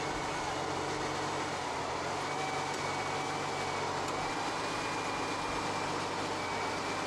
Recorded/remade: recorded